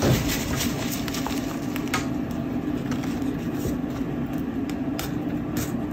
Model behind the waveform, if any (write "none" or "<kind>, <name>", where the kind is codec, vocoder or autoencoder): none